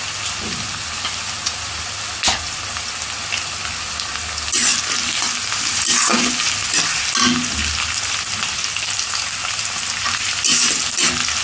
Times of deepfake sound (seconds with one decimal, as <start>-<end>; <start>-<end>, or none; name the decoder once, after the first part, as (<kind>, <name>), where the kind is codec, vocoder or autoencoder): none